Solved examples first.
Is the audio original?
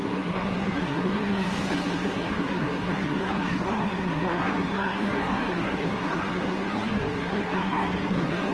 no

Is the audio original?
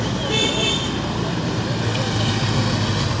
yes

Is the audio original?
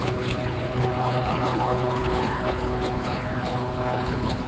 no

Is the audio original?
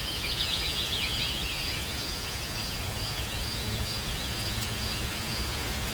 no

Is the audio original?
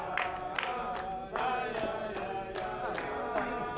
yes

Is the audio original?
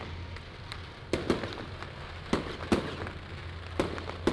yes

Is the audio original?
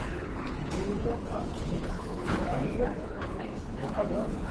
no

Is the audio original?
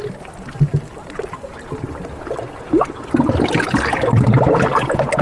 yes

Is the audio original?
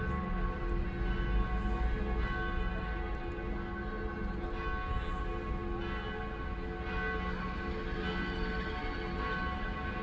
yes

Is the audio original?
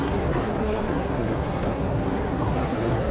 no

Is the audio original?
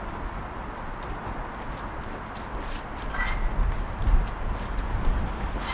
yes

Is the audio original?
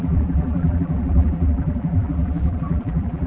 no